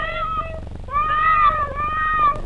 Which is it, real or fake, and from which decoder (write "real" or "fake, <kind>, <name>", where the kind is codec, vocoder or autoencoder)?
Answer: real